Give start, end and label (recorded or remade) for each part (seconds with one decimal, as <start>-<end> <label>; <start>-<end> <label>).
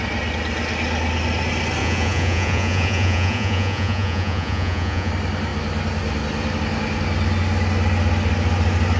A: 0.0-1.8 recorded; 1.8-5.1 remade; 5.1-9.0 recorded